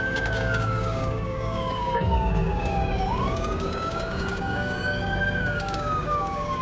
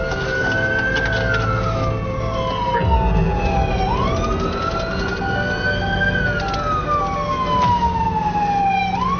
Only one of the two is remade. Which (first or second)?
first